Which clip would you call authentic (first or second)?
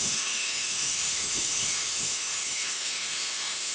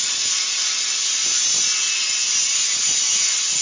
second